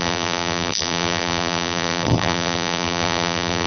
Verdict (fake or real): fake